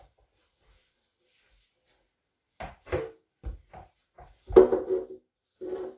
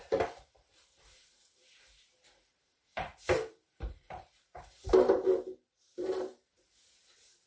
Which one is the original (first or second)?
first